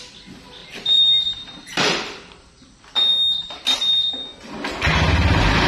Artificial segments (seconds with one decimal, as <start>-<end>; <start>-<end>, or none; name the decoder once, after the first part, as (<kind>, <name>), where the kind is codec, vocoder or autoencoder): 0.6-2.5 (vocoder, BigVGAN v2)